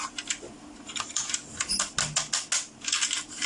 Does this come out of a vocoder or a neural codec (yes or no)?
no